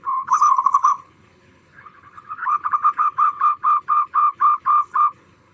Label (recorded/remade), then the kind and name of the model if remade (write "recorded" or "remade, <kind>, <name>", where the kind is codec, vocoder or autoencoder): remade, codec, HILCodec